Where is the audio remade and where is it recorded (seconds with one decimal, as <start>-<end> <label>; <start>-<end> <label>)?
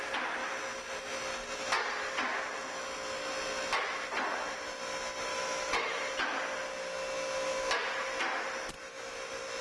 0.0-5.3 recorded; 5.3-5.9 remade; 5.9-9.6 recorded